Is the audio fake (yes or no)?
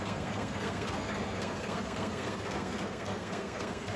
yes